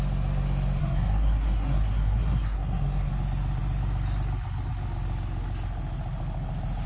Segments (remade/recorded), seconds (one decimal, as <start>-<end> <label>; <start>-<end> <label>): 0.0-0.8 recorded; 0.8-3.1 remade; 3.1-6.9 recorded